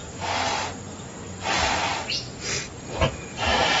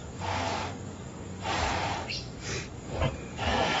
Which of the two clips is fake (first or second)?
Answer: second